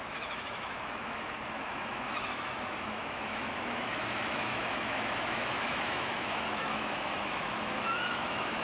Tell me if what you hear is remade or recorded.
remade